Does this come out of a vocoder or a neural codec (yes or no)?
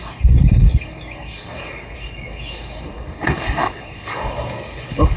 yes